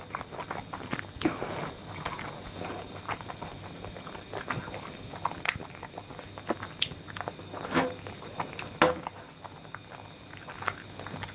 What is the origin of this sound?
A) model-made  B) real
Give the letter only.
B